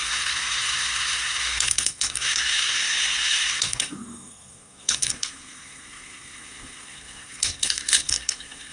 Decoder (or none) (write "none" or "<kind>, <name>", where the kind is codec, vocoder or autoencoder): codec, SNAC